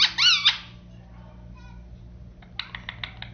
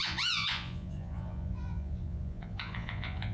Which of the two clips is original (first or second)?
first